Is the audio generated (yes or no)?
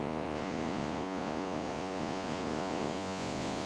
yes